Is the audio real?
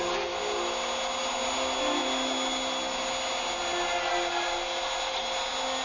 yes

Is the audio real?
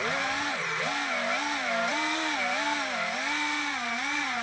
yes